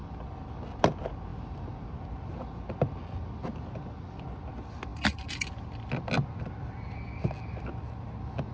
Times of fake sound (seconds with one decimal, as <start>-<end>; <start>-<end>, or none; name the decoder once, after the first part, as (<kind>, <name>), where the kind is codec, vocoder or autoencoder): none